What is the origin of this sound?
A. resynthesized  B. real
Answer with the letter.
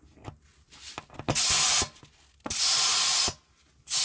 B